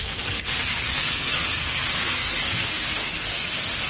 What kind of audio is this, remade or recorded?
remade